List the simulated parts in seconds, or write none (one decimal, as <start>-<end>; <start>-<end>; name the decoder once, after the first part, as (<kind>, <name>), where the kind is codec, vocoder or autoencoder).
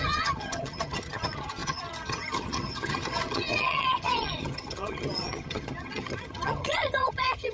0.0-7.5 (vocoder, HiFi-GAN)